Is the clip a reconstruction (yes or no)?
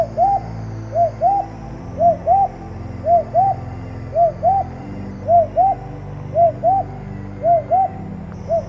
no